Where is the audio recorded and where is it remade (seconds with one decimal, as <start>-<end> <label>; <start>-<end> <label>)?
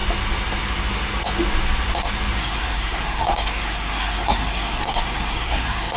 0.0-2.4 recorded; 2.4-6.0 remade